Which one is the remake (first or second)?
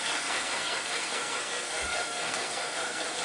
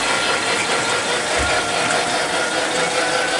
first